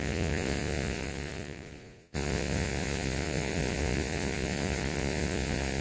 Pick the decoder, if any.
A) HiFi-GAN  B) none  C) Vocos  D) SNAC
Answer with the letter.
C